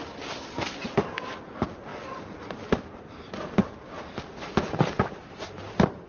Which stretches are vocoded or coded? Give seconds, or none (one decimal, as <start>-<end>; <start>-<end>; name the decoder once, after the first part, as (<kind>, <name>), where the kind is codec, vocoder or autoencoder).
none